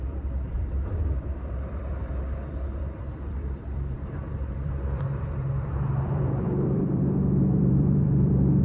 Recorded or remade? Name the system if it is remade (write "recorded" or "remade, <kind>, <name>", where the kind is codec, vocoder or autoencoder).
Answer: remade, vocoder, BigVGAN v2